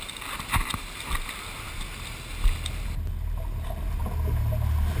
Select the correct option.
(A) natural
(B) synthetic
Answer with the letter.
A